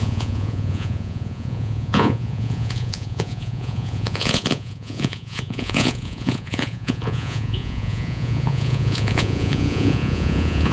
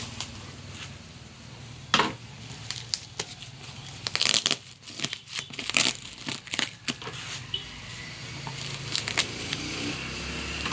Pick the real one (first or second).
second